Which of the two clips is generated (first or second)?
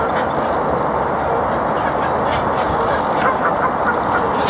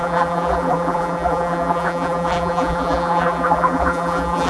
second